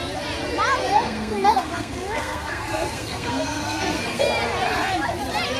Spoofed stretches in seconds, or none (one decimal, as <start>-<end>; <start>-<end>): 0.8-4.2